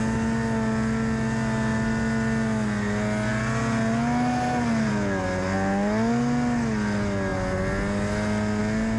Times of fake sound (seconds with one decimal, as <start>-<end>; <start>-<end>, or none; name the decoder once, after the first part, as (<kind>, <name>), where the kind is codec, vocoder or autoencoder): none